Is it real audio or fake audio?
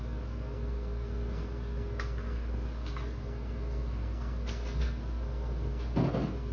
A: fake